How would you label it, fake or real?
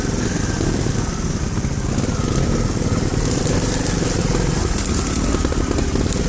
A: real